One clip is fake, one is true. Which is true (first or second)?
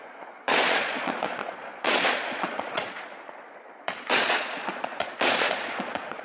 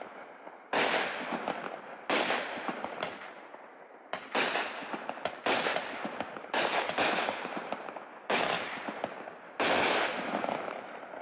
second